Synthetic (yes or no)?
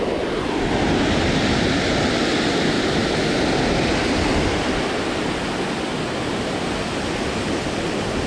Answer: no